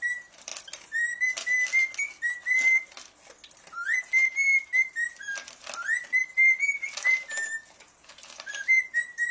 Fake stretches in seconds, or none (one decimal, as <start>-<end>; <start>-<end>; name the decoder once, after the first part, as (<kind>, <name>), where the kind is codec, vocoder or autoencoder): 0.0-0.5 (vocoder, BigVGAN v2); 4.0-4.7; 8.9-9.3